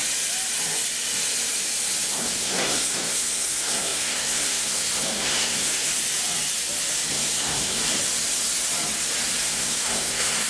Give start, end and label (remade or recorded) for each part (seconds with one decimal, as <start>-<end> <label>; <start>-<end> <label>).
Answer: 0.0-2.1 recorded; 2.1-5.9 remade; 5.9-7.1 recorded; 7.1-7.8 remade; 7.8-9.4 recorded; 9.4-10.5 remade